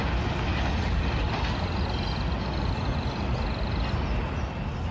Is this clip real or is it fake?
real